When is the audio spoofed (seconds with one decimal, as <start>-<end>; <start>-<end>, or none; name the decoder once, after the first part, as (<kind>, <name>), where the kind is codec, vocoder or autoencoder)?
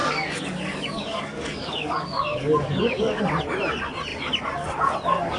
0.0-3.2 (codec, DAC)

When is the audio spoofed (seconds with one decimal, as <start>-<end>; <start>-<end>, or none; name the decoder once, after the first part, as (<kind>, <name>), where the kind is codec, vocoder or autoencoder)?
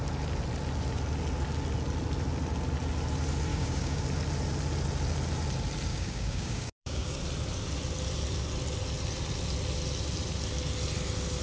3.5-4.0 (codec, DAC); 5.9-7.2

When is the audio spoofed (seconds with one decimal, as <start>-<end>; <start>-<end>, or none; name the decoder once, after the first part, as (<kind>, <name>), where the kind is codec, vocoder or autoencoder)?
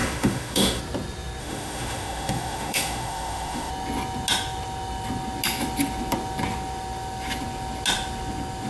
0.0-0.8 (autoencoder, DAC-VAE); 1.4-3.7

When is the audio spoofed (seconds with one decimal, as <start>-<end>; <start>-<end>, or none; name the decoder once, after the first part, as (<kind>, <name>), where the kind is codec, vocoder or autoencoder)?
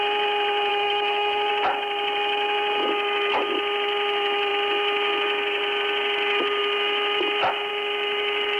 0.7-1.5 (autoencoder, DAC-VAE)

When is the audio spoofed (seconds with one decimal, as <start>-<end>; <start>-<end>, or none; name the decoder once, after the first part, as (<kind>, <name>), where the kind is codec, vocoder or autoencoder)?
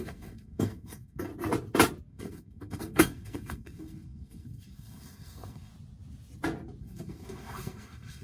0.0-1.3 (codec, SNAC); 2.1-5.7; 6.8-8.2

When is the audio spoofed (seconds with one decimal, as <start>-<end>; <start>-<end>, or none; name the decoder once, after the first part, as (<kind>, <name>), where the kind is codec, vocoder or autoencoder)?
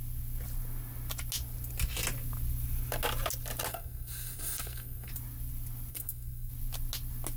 3.7-5.1 (codec, SNAC); 5.9-6.5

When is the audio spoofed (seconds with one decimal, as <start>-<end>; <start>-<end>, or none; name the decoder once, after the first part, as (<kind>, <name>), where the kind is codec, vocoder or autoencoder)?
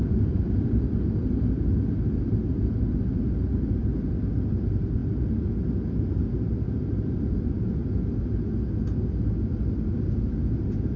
none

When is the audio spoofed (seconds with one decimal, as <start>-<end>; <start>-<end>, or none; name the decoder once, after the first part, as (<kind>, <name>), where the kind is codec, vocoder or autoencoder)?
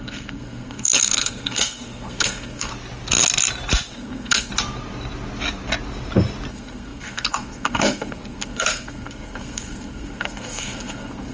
0.0-2.7 (codec, SNAC); 3.9-4.5; 6.5-11.3